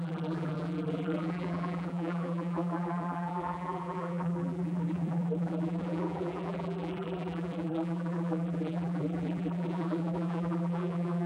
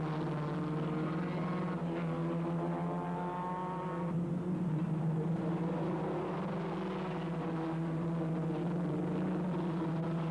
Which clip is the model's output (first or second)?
first